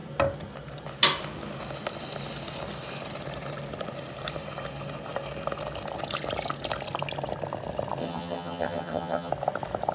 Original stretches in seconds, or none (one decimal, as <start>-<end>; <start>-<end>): 0.0-8.0; 9.3-9.9